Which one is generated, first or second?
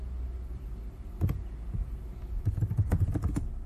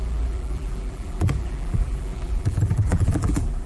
second